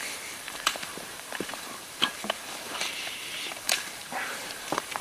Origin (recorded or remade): remade